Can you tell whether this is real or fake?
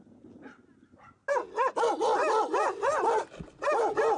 real